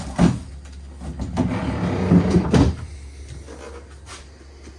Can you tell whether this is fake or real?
real